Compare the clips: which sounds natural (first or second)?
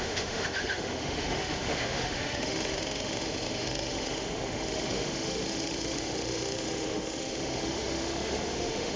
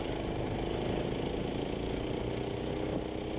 second